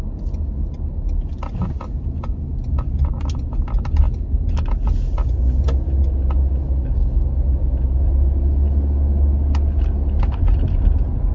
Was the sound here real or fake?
real